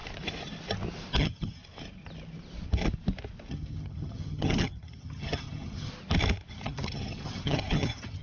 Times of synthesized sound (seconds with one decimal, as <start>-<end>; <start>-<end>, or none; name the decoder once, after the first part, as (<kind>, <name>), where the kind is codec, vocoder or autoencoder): 1.2-1.6 (vocoder, HiFi-GAN); 3.5-5.9; 6.5-8.2